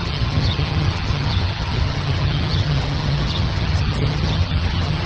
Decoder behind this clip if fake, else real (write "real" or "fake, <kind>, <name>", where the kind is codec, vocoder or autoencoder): fake, vocoder, HiFi-GAN